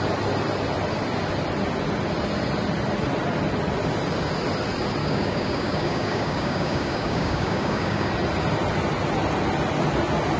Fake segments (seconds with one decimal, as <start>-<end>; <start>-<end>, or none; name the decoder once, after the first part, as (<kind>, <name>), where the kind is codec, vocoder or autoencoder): 5.0-8.1 (codec, DAC)